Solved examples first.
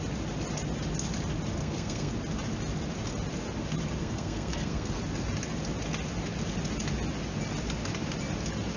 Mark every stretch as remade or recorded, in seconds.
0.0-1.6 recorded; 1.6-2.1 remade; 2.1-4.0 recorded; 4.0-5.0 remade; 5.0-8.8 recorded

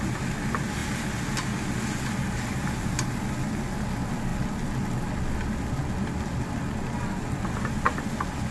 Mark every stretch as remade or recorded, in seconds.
0.0-8.5 recorded

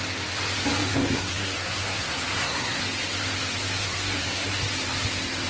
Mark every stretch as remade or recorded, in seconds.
0.0-0.9 recorded; 0.9-2.8 remade; 2.8-3.8 recorded; 3.8-4.6 remade; 4.6-5.5 recorded

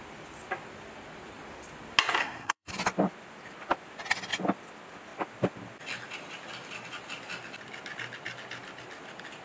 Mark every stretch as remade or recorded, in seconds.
0.0-2.2 recorded; 2.2-2.7 remade; 2.7-9.4 recorded